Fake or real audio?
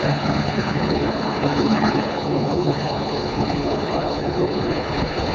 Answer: fake